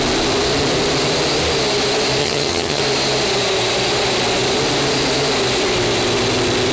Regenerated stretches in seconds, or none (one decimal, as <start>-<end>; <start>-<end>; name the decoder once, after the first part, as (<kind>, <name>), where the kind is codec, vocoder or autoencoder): 2.2-2.8 (vocoder, HiFi-GAN)